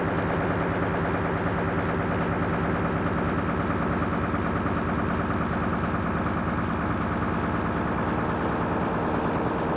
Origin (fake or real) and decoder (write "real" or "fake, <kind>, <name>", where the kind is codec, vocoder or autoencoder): real